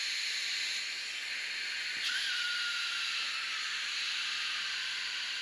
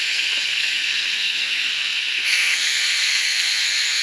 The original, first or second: first